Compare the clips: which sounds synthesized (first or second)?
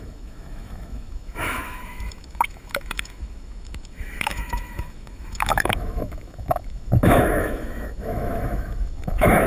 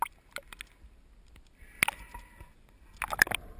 first